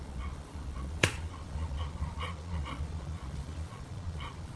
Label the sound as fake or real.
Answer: fake